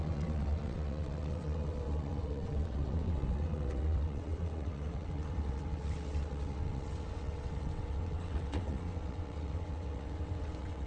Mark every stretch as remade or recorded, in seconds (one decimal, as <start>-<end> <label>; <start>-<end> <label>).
0.0-10.9 remade